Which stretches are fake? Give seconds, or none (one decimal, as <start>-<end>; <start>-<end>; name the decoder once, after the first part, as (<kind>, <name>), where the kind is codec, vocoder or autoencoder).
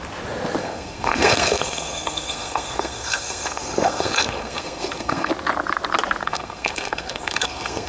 0.6-5.3 (codec, SNAC); 6.2-7.9